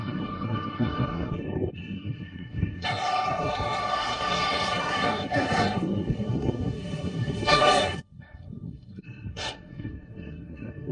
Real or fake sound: fake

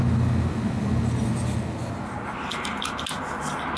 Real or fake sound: real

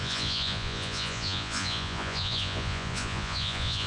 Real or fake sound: fake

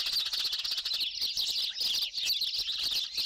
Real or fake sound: real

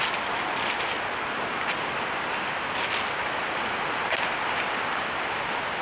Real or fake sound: real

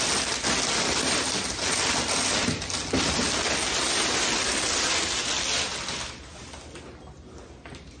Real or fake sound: real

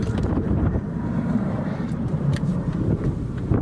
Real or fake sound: fake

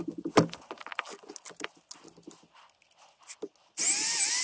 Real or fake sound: real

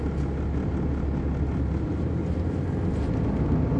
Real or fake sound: real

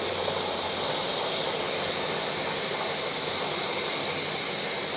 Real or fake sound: real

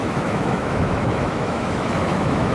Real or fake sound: fake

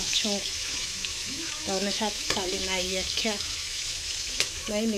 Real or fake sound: fake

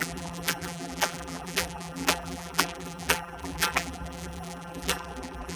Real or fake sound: fake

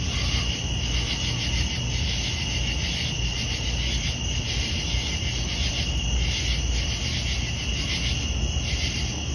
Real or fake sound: real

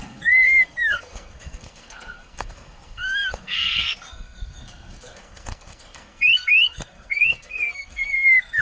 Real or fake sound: fake